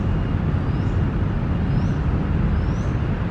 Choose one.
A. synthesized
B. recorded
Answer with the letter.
B